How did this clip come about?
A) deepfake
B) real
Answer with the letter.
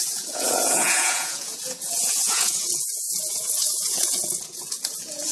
A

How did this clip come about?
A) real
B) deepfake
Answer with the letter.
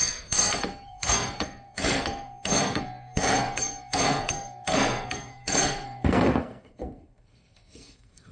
B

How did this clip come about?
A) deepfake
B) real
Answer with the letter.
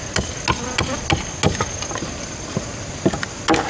B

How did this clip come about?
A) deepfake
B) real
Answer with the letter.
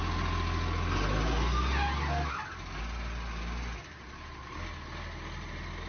B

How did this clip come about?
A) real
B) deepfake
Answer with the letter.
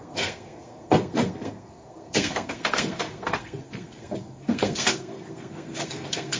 B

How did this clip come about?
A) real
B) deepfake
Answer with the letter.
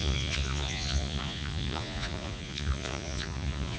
B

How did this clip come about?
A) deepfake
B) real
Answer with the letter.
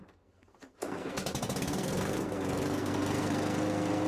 A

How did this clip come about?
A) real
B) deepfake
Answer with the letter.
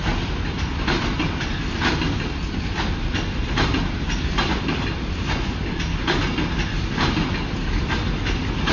A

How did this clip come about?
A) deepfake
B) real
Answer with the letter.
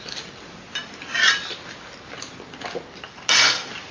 B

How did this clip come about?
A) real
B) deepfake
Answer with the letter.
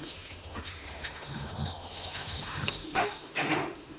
B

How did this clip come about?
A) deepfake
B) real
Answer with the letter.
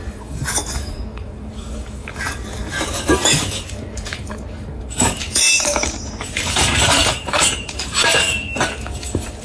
A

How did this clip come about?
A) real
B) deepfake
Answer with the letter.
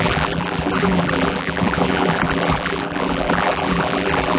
B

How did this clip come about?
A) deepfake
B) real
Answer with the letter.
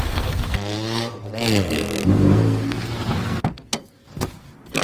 A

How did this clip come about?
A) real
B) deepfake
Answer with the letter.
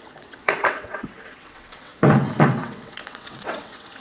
B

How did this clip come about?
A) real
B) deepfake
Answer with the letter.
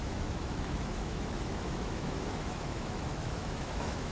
B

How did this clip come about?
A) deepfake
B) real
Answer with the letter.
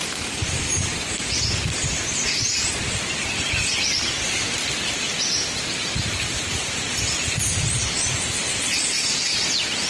B